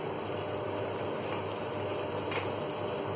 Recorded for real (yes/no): yes